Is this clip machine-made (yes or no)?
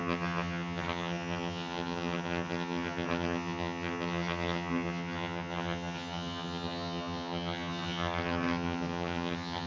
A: yes